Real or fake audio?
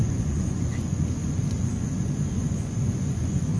fake